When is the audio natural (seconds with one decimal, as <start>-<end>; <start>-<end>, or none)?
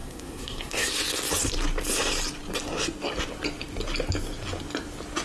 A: 0.9-5.2